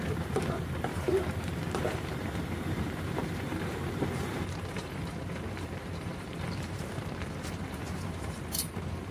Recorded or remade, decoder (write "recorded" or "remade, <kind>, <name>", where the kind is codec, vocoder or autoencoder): remade, vocoder, BigVGAN v2